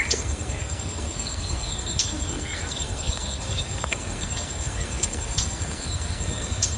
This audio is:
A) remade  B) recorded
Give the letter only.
A